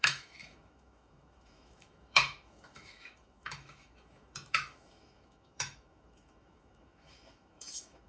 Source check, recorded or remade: remade